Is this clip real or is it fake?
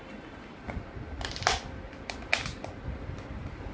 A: real